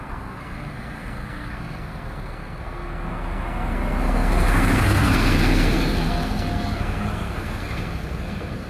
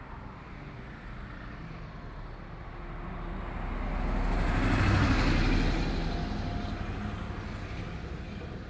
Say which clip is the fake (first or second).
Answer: first